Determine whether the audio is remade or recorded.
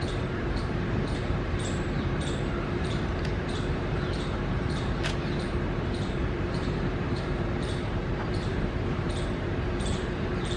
remade